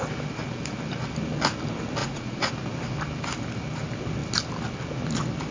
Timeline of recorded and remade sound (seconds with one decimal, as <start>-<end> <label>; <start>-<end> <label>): 0.0-2.0 recorded; 2.0-2.5 remade; 2.5-5.5 recorded